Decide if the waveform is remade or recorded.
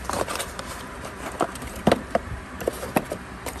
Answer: remade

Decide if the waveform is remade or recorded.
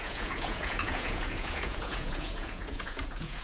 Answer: remade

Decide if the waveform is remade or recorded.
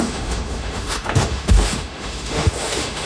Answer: remade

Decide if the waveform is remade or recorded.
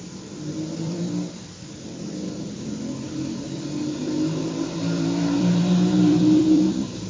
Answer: remade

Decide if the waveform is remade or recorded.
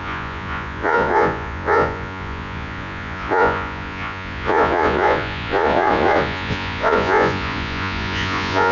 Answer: remade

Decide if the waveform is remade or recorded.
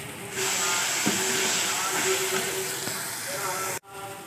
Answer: recorded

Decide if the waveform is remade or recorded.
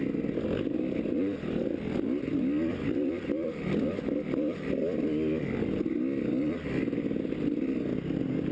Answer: recorded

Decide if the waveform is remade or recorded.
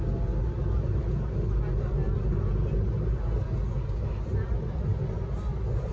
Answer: recorded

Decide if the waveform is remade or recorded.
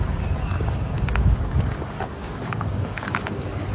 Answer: remade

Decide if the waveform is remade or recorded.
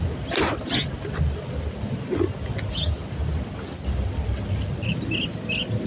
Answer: recorded